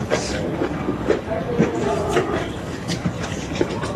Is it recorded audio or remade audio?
remade